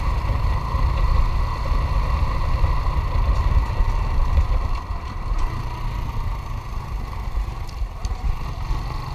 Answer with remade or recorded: recorded